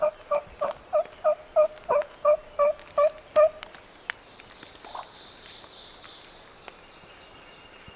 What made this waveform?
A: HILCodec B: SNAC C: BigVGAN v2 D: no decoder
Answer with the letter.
D